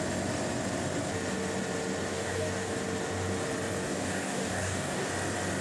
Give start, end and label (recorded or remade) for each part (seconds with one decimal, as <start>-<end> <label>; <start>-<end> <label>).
0.0-2.1 recorded; 2.1-2.8 remade; 2.8-3.8 recorded; 3.8-5.1 remade; 5.1-5.6 recorded